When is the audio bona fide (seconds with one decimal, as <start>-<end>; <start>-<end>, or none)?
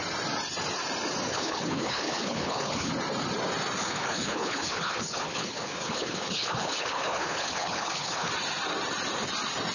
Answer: 0.0-1.3; 2.9-3.8; 8.3-9.7